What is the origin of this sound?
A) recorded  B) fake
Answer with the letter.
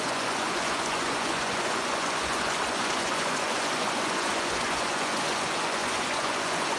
B